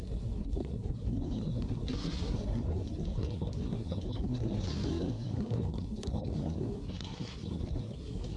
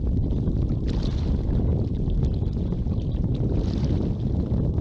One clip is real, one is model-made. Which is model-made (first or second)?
first